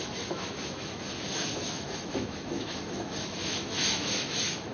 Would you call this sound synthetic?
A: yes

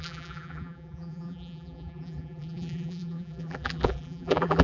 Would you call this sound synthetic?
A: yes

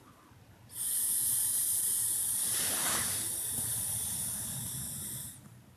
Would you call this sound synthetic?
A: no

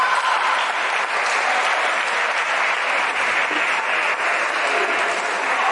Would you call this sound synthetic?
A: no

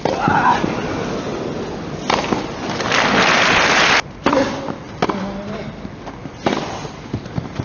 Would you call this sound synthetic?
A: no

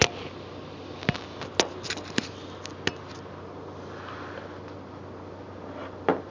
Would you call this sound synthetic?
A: no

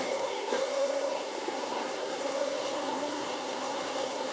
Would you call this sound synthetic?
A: yes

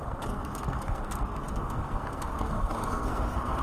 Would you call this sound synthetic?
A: yes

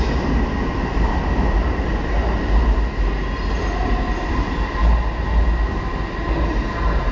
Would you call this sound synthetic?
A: no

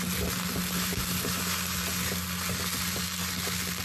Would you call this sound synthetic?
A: no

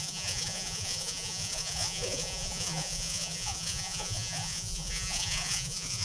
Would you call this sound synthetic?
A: yes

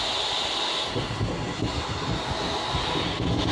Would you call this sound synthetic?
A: no